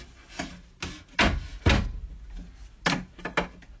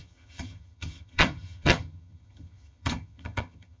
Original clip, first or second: first